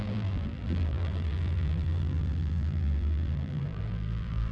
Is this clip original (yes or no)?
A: no